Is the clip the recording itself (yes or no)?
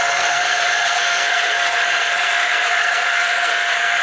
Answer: no